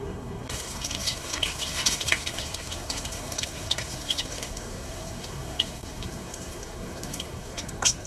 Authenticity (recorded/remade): remade